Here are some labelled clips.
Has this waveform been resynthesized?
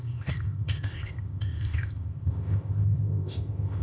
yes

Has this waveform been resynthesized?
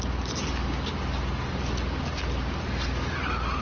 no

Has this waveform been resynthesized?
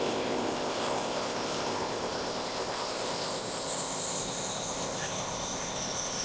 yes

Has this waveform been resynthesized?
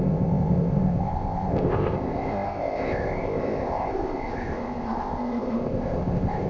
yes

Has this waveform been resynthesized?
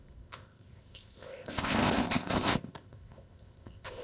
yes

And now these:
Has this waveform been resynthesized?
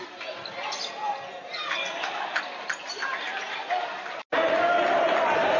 no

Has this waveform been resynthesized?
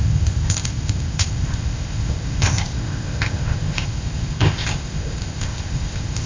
yes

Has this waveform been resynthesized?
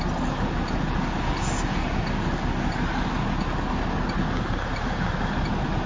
no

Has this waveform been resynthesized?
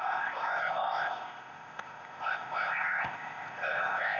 yes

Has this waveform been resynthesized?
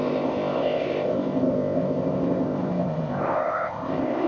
yes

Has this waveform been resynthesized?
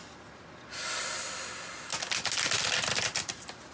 no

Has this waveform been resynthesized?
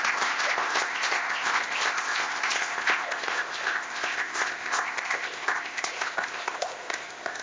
yes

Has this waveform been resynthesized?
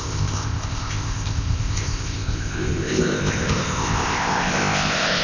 yes